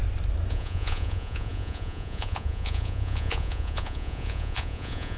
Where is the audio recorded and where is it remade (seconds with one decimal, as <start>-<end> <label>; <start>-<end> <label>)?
0.0-0.5 recorded; 0.5-5.2 remade